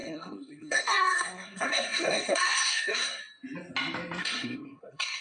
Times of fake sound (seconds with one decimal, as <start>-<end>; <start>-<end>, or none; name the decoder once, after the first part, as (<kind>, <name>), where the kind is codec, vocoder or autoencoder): 0.0-3.2 (codec, SNAC); 4.2-5.2